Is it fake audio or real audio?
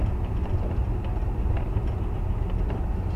real